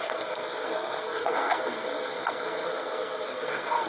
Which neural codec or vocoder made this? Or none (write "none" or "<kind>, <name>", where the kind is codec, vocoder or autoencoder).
codec, SNAC